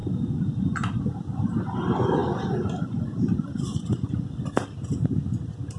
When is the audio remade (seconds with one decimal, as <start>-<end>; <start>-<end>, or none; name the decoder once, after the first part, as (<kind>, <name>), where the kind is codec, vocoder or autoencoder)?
none